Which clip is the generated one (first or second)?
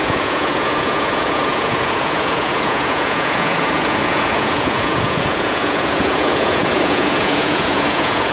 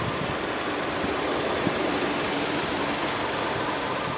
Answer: first